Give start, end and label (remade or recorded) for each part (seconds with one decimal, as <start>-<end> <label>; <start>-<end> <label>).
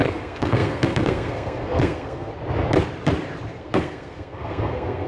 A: 0.0-2.3 remade; 2.3-3.5 recorded; 3.5-5.1 remade